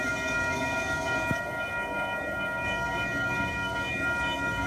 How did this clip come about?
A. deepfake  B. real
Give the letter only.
A